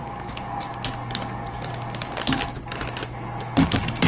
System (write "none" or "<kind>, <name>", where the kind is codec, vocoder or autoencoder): none